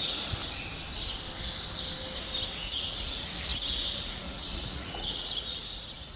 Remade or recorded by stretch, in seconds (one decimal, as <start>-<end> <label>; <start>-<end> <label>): 0.0-0.4 remade; 0.4-2.5 recorded; 2.5-6.2 remade